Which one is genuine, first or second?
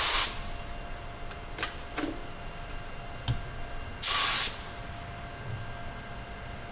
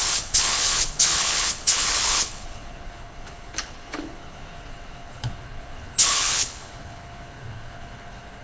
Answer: first